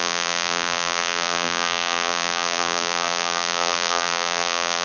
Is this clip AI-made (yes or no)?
yes